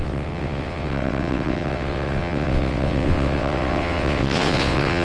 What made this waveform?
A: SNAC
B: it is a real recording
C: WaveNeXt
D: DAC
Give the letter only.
C